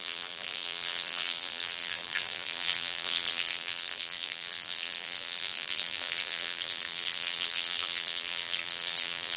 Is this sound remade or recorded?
remade